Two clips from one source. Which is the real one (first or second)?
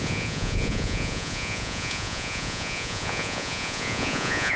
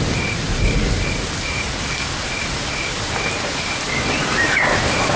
second